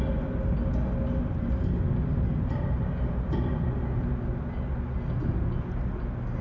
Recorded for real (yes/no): yes